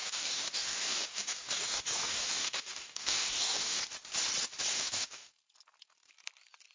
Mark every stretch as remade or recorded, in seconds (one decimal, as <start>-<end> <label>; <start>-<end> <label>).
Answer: 0.0-3.8 remade; 3.8-4.7 recorded; 4.7-5.3 remade; 5.3-6.7 recorded